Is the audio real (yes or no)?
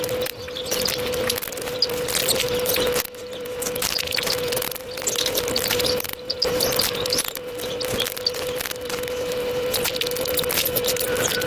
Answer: yes